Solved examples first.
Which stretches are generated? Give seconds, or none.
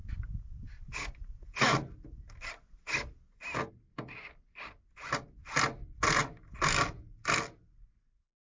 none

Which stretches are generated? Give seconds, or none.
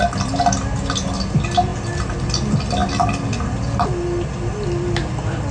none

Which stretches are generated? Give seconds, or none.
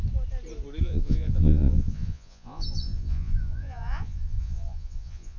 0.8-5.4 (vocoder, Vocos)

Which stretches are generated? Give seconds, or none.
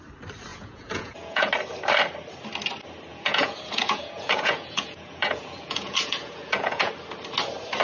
0.5-1.5 (vocoder, Vocos); 3.1-6.9